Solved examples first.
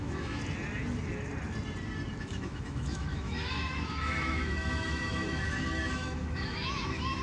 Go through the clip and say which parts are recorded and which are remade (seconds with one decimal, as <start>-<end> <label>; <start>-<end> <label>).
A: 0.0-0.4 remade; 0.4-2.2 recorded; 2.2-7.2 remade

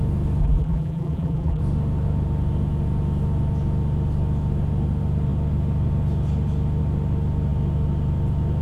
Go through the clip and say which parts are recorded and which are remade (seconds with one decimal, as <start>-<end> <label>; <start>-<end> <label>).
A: 0.0-0.4 recorded; 0.4-1.6 remade; 1.6-8.6 recorded

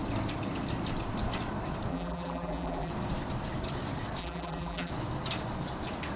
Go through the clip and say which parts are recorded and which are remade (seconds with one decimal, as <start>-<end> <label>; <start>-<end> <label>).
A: 0.0-1.9 recorded; 1.9-2.9 remade; 2.9-4.2 recorded; 4.2-4.9 remade; 4.9-6.2 recorded

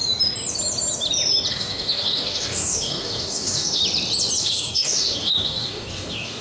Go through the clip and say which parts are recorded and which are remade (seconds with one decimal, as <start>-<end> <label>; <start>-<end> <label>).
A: 0.0-1.5 recorded; 1.5-3.8 remade; 3.8-4.4 recorded; 4.4-6.4 remade

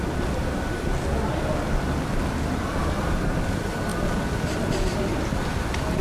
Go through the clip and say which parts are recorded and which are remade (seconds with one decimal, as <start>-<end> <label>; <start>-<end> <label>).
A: 0.0-6.0 recorded

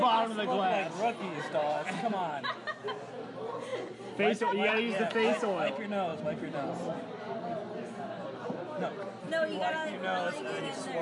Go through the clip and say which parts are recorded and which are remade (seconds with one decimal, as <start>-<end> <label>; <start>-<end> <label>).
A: 0.0-11.0 recorded

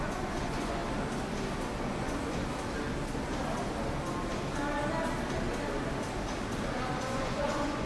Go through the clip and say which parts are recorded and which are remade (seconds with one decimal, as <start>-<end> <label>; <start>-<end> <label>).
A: 0.0-0.8 remade; 0.8-1.8 recorded; 1.8-2.4 remade; 2.4-7.1 recorded; 7.1-7.9 remade

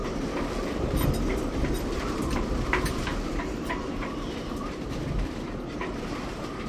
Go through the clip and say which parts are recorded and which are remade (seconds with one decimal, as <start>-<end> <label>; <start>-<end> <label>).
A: 0.0-6.7 remade